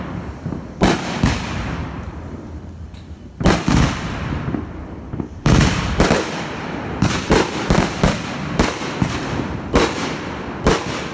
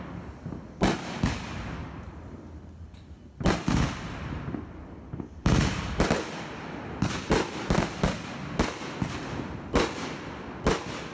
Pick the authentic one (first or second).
second